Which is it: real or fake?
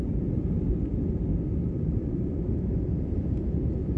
fake